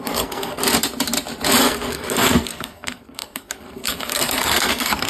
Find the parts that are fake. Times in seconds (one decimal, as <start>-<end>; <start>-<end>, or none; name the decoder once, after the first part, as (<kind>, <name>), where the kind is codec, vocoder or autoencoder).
0.0-0.6 (codec, SNAC); 1.6-5.1